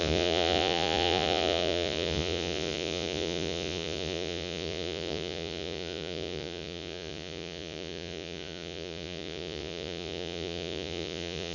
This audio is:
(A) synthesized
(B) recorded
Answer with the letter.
A